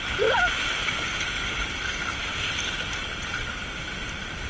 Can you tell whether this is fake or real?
real